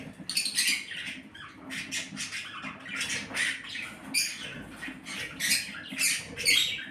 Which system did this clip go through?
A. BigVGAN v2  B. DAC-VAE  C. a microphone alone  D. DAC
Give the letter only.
C